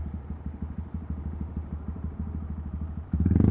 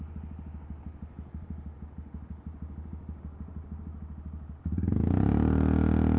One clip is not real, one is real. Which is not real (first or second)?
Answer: first